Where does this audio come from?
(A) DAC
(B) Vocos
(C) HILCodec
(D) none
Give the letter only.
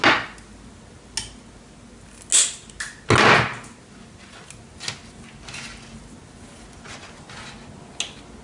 D